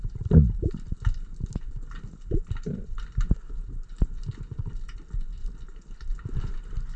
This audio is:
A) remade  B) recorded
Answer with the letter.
B